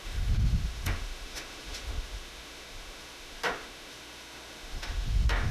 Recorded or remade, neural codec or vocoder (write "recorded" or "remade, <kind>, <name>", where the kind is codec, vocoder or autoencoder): remade, autoencoder, DAC-VAE